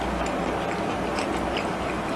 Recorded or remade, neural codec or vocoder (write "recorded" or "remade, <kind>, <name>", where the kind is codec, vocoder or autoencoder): recorded